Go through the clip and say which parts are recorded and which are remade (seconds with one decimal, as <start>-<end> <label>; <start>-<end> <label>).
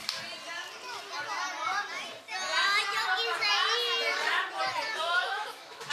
0.0-4.9 recorded; 4.9-5.9 remade